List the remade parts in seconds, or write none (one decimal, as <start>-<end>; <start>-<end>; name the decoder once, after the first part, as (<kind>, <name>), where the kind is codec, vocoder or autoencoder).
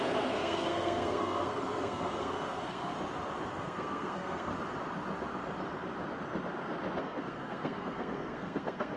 0.0-2.9 (codec, SNAC); 3.5-4.5; 7.0-9.0